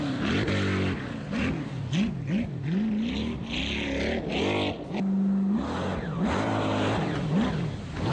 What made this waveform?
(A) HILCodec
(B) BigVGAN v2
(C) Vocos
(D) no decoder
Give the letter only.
D